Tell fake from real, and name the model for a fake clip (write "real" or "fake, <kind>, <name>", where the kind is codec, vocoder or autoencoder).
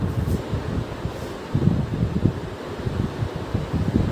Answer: real